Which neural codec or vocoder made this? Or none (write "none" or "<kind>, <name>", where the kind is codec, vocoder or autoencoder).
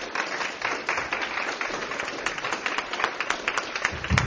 vocoder, BigVGAN v2